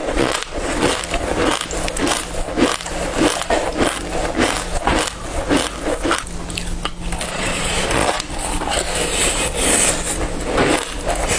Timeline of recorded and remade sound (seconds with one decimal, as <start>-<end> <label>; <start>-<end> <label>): 0.0-0.9 remade; 0.9-7.3 recorded; 7.3-8.3 remade; 8.3-11.4 recorded